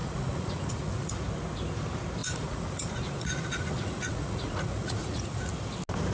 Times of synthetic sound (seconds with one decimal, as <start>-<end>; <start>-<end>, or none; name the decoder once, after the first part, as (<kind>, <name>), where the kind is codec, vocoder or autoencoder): 0.0-1.1 (vocoder, Vocos); 2.2-5.5